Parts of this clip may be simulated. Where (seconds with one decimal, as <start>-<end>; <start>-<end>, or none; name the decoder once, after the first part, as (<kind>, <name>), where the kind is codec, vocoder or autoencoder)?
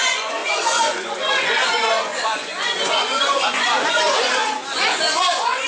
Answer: 0.0-5.7 (vocoder, Vocos)